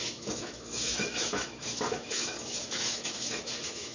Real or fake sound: fake